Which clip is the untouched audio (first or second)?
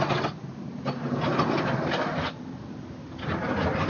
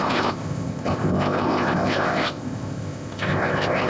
first